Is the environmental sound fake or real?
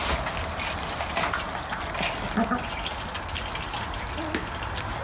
real